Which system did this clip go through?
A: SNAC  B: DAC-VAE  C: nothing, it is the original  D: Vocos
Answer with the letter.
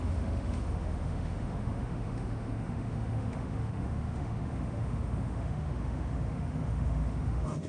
B